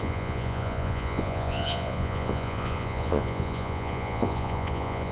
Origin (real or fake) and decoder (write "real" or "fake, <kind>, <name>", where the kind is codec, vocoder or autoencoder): fake, vocoder, Vocos